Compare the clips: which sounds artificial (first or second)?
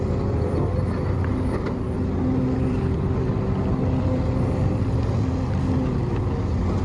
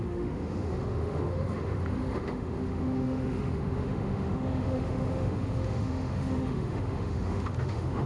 second